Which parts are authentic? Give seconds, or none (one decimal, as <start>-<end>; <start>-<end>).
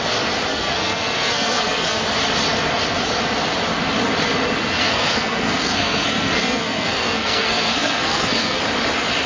0.0-0.5; 2.0-4.8; 8.6-9.3